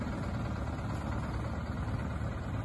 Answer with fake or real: real